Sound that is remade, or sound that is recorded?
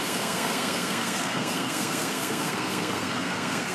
remade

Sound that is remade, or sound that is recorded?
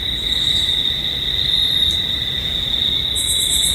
recorded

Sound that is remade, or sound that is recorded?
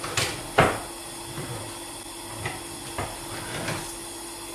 recorded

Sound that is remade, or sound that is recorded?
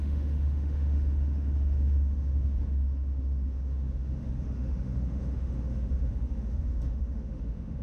remade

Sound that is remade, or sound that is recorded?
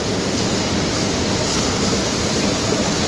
recorded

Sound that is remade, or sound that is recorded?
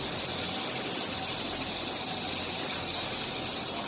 recorded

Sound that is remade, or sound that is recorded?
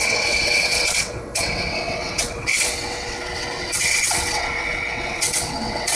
remade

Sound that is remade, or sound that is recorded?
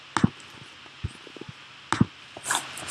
recorded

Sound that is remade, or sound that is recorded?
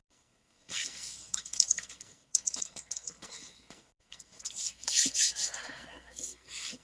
remade